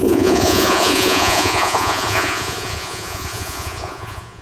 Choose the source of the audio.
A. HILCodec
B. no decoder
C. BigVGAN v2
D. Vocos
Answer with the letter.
D